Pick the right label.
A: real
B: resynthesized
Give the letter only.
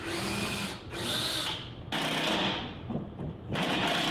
A